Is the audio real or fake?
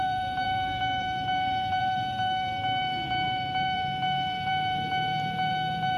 fake